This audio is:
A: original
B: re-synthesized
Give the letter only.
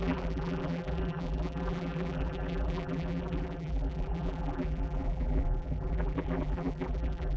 B